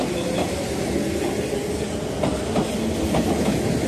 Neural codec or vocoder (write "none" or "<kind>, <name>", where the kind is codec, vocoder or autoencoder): none